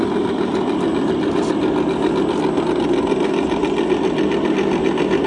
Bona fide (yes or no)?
yes